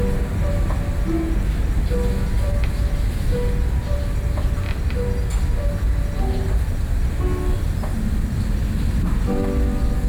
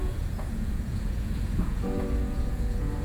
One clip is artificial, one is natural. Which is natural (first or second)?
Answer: first